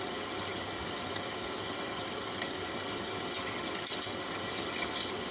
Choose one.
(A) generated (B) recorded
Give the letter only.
A